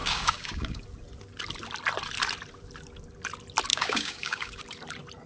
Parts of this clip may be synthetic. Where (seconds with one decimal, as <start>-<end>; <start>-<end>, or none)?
0.0-0.8; 3.7-4.6